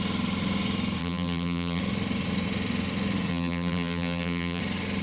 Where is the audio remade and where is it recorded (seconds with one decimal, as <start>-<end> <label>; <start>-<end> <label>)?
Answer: 0.0-1.0 recorded; 1.0-1.8 remade; 1.8-3.3 recorded; 3.3-4.6 remade; 4.6-5.0 recorded